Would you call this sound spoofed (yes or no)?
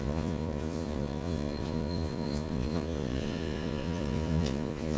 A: yes